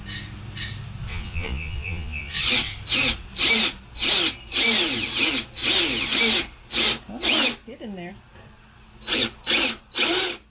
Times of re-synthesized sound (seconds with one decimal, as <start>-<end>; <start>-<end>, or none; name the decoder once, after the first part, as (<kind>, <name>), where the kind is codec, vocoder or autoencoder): 1.1-2.4 (vocoder, Vocos)